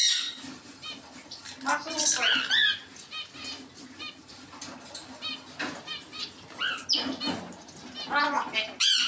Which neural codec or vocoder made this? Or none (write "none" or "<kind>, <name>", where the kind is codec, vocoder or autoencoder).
none